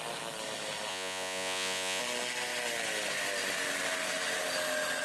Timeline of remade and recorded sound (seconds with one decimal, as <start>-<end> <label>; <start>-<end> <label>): 0.0-0.9 recorded; 0.9-2.0 remade; 2.0-5.0 recorded